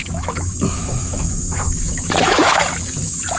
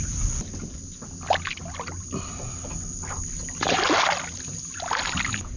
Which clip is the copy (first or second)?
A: first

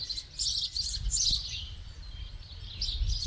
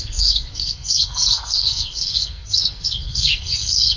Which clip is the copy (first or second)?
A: second